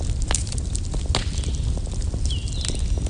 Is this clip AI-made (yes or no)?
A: no